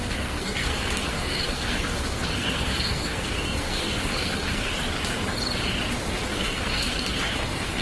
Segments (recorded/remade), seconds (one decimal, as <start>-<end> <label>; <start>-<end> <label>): 0.0-4.7 remade; 4.7-6.3 recorded; 6.3-7.8 remade